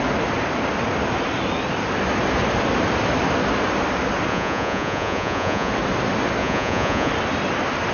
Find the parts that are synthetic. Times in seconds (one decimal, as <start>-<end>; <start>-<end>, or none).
4.3-5.7; 6.4-7.1